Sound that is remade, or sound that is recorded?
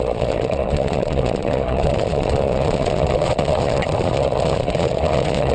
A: remade